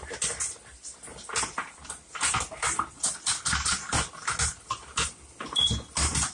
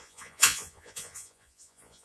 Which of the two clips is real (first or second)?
first